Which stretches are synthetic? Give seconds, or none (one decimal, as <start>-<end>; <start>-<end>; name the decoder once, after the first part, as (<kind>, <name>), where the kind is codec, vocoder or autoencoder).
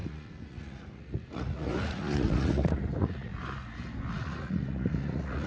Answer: 0.0-3.3 (vocoder, Vocos); 4.1-5.5